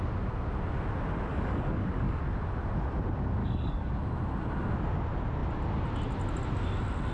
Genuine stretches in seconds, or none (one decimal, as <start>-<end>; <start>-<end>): 0.0-1.3; 2.2-3.4; 3.9-7.1